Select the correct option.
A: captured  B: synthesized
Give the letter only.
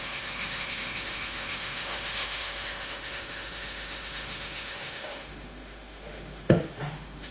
B